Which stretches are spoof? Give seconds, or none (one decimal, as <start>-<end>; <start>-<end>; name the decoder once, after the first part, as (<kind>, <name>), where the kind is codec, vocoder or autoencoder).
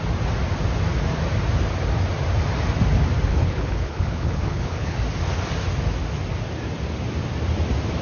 3.3-5.0 (codec, HILCodec)